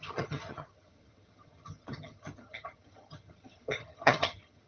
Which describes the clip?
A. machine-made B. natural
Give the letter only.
A